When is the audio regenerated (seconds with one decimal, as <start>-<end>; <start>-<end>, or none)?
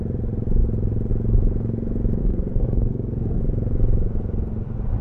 2.2-3.4